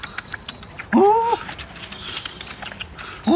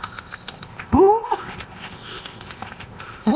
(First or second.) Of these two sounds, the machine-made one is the second